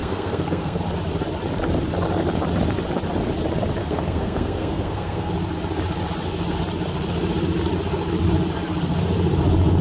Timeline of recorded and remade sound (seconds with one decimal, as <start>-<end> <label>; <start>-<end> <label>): 0.0-0.8 remade; 0.8-3.8 recorded; 3.8-5.3 remade; 5.3-9.8 recorded